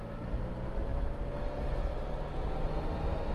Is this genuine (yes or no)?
yes